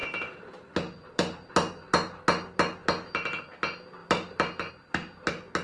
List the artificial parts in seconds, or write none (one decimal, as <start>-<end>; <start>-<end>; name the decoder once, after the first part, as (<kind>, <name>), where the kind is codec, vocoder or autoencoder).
0.0-1.5 (vocoder, BigVGAN v2); 4.0-4.7